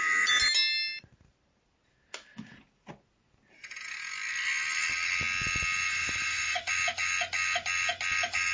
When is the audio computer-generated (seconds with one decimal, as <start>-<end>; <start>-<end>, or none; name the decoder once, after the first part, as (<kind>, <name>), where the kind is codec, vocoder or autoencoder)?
2.3-2.9 (vocoder, Vocos); 5.9-6.7